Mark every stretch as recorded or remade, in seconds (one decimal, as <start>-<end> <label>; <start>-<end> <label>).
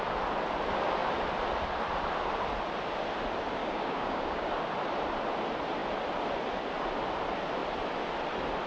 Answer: 0.0-3.6 recorded; 3.6-4.5 remade; 4.5-8.7 recorded